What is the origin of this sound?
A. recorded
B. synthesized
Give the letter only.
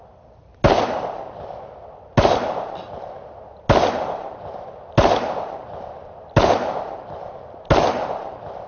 A